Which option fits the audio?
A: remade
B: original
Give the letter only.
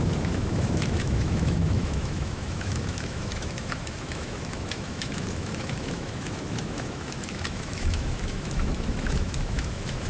A